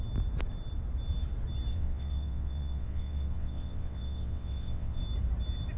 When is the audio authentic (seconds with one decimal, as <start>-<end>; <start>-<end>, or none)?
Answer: 0.0-1.7; 5.0-5.8